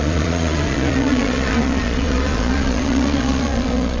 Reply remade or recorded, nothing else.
remade